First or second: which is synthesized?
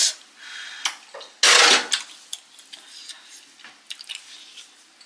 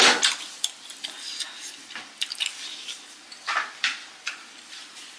second